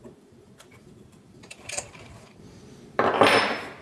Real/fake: fake